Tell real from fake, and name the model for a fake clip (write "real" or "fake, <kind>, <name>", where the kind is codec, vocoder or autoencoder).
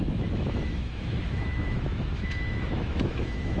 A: fake, autoencoder, DAC-VAE